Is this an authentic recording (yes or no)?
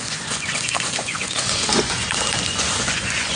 no